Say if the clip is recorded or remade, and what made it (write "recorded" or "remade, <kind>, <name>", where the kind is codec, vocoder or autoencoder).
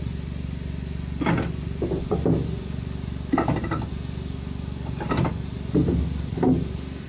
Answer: recorded